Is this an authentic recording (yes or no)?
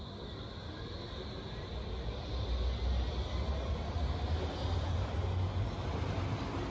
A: yes